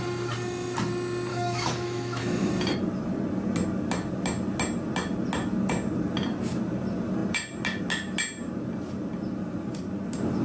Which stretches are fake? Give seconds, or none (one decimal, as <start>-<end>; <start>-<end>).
1.3-2.5